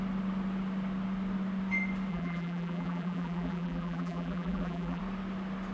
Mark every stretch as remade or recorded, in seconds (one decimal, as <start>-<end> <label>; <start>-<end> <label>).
0.0-2.1 recorded; 2.1-5.0 remade; 5.0-5.7 recorded